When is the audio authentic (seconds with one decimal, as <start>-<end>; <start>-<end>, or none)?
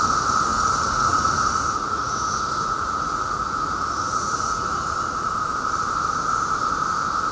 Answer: 0.0-0.5; 4.9-7.3